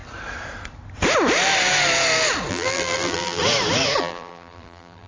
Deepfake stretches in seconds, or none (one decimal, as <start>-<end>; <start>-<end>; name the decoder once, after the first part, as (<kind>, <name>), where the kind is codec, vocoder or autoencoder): 2.5-3.4 (vocoder, BigVGAN v2); 4.0-5.1